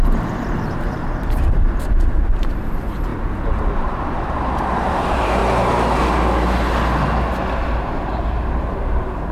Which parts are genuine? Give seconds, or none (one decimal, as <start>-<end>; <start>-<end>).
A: 3.1-3.6; 5.4-7.7